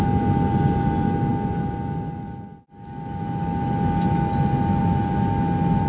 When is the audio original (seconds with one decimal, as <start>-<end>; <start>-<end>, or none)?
0.0-5.9

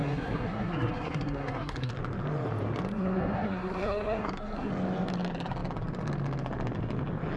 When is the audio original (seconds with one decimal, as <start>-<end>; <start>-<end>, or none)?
1.9-2.9; 4.7-7.4

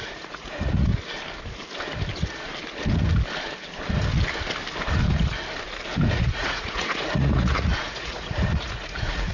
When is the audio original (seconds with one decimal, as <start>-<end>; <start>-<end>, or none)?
0.9-6.1

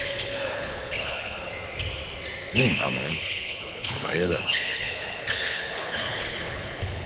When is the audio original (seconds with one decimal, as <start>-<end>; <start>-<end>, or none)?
1.5-2.5

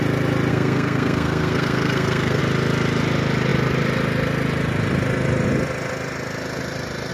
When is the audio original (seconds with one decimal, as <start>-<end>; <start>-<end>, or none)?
0.0-0.5; 2.4-7.1

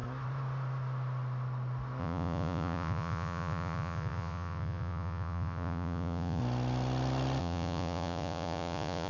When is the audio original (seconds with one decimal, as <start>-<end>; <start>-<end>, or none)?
0.0-2.0; 6.4-7.4

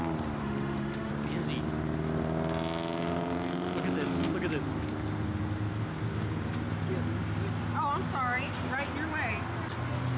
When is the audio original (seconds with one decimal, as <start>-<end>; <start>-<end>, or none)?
0.0-0.4; 1.1-10.2